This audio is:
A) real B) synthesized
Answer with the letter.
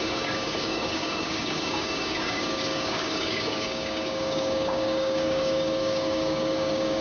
B